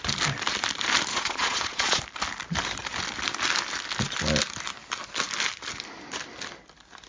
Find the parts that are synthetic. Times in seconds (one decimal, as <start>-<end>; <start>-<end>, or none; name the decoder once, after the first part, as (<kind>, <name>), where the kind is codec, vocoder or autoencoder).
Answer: 1.1-2.0 (vocoder, Vocos)